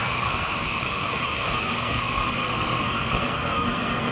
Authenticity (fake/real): fake